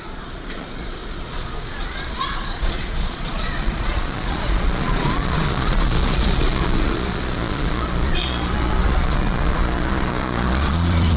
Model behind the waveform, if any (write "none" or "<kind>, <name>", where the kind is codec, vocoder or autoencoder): vocoder, Vocos